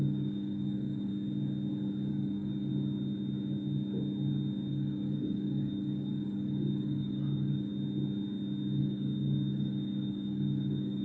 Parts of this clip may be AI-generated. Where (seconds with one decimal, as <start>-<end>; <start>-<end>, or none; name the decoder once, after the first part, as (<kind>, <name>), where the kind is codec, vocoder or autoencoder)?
0.0-1.1 (codec, DAC); 2.1-2.7; 4.7-7.7; 8.8-11.0